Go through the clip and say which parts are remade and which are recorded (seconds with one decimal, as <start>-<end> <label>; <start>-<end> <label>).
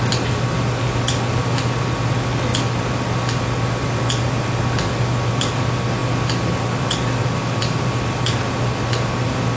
0.0-9.6 recorded